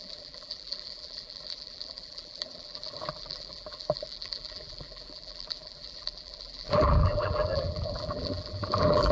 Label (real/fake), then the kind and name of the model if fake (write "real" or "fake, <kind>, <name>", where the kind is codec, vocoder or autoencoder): fake, vocoder, BigVGAN v2